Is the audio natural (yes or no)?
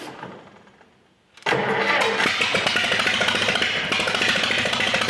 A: yes